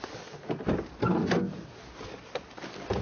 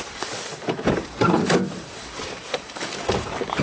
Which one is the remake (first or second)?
second